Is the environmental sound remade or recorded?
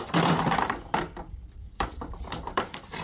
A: remade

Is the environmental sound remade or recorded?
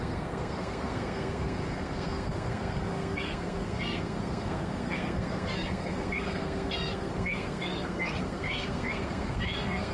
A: remade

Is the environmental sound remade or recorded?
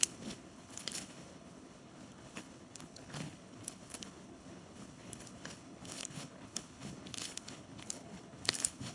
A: remade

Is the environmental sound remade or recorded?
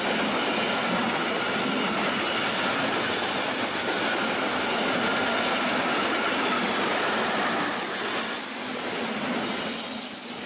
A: recorded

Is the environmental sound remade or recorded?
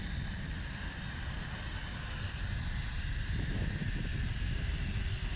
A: recorded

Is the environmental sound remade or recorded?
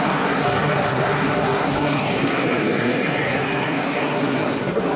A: remade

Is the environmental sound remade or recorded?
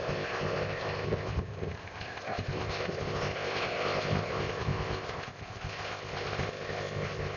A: remade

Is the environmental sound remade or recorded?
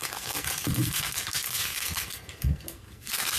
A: remade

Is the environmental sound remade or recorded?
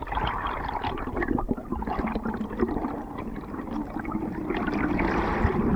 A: remade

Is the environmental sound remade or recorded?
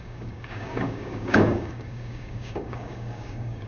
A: remade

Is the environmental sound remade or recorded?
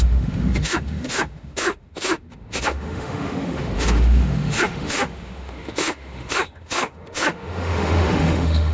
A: remade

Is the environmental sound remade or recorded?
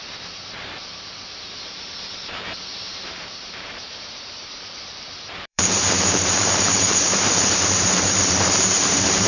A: remade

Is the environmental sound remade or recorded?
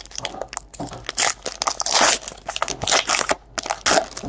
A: recorded